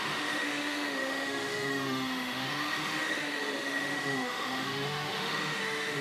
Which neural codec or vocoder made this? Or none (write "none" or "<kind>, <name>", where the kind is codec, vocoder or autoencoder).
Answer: autoencoder, DAC-VAE